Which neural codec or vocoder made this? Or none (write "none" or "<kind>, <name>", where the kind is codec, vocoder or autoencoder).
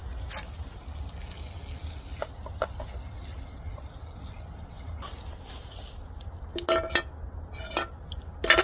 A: none